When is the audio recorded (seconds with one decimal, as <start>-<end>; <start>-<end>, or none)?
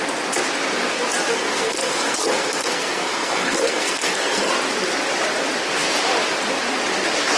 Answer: 0.0-1.3; 4.5-7.4